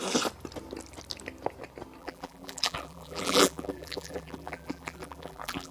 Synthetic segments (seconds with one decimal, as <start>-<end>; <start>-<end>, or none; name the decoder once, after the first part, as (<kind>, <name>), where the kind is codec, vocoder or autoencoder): 2.0-5.7 (vocoder, BigVGAN v2)